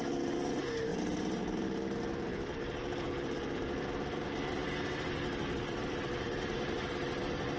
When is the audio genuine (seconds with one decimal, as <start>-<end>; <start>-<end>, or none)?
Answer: 0.0-0.9; 1.4-2.3; 5.9-7.6